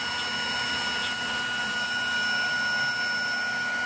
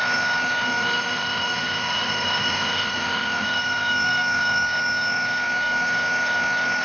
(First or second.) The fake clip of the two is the second